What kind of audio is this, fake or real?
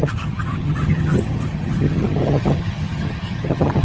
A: fake